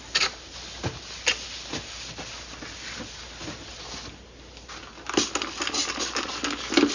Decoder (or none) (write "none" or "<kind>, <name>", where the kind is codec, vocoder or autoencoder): none